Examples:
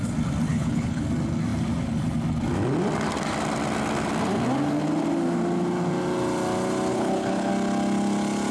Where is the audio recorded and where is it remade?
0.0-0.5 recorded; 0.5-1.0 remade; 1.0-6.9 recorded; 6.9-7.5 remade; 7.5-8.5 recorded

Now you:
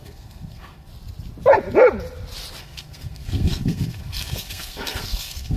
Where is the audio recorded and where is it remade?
0.0-0.9 remade; 0.9-2.6 recorded; 2.6-5.6 remade

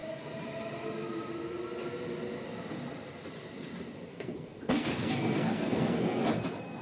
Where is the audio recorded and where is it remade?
0.0-4.1 recorded; 4.1-6.2 remade; 6.2-6.8 recorded